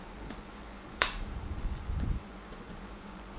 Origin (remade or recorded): remade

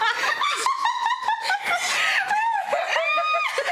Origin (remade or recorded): recorded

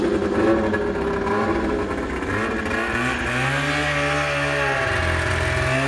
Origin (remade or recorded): recorded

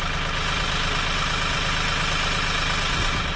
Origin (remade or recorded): recorded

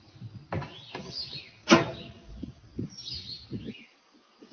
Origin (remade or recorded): recorded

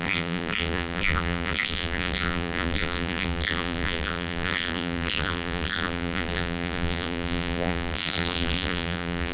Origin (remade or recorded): remade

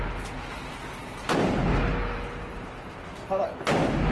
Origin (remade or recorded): recorded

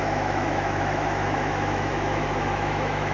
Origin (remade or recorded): remade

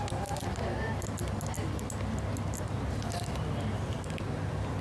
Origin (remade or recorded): recorded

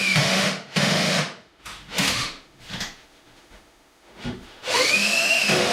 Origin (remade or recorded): remade